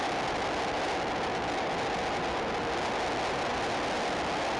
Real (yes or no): yes